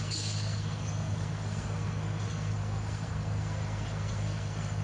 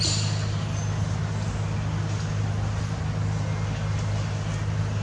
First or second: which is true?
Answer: second